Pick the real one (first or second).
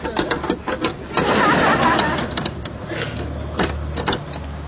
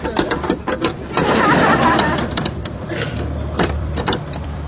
first